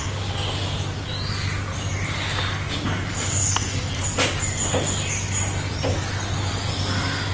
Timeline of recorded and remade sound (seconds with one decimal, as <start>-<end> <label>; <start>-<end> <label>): 0.0-3.1 recorded; 3.1-3.9 remade; 3.9-7.3 recorded